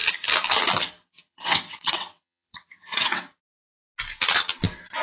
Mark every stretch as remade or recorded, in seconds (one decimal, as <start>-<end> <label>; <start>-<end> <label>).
0.0-1.1 recorded; 1.1-3.3 remade; 3.3-5.0 recorded